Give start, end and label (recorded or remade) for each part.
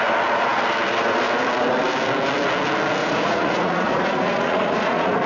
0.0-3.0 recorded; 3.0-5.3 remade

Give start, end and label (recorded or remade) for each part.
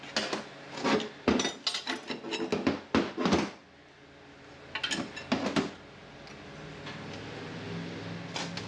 0.0-8.7 recorded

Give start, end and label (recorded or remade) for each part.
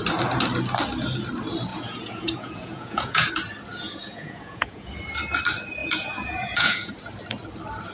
0.0-1.7 recorded; 1.7-3.3 remade; 3.3-3.7 recorded; 3.7-4.9 remade; 4.9-5.8 recorded; 5.8-6.9 remade; 6.9-7.9 recorded